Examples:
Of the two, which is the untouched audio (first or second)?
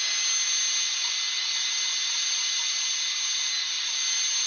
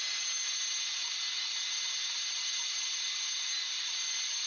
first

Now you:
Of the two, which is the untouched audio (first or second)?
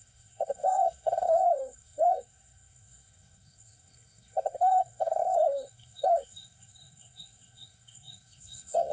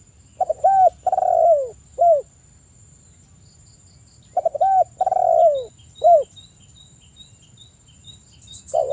second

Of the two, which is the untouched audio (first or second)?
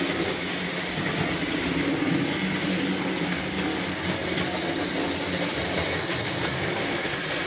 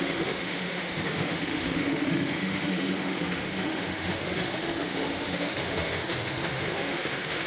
first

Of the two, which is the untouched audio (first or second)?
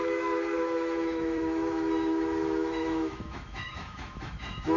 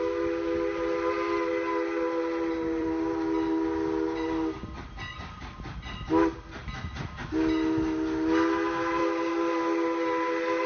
second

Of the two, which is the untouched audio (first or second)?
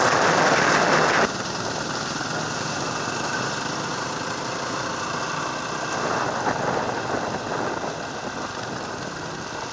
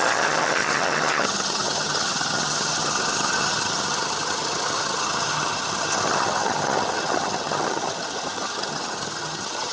first